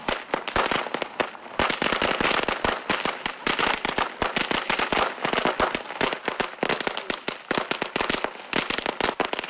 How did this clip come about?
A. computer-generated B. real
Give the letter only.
B